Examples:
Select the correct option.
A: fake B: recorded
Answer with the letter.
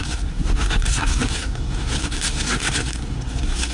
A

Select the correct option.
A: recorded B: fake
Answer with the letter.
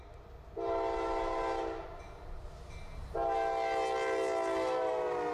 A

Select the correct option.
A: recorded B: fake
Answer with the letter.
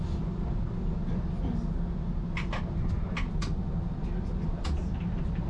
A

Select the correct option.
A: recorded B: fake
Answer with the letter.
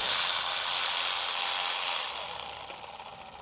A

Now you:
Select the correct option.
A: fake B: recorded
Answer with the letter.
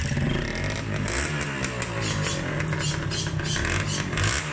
B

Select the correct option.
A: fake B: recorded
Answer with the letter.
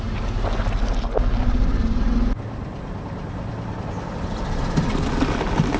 B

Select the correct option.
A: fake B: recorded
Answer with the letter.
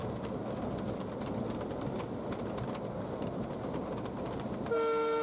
B